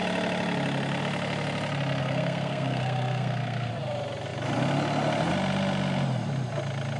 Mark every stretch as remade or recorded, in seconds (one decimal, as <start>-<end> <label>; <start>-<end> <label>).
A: 0.0-2.0 recorded; 2.0-3.7 remade; 3.7-7.0 recorded